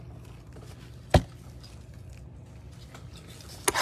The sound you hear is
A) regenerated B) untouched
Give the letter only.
B